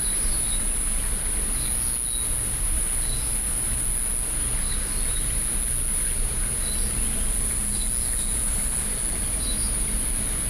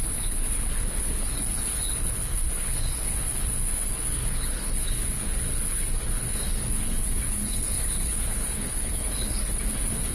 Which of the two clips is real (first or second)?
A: first